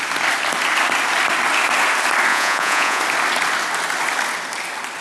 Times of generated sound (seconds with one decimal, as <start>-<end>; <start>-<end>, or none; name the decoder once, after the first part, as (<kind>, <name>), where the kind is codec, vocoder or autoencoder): 2.3-3.0 (vocoder, Vocos)